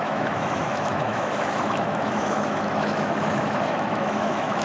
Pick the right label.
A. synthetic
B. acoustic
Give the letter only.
A